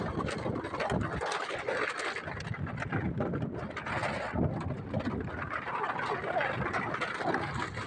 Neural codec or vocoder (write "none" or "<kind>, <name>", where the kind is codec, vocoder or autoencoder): none